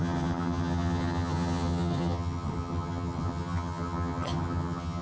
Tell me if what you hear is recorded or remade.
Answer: remade